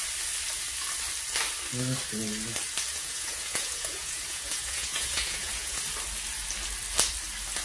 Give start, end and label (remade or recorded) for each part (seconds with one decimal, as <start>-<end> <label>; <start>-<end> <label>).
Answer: 0.0-2.9 recorded; 2.9-5.8 remade; 5.8-7.6 recorded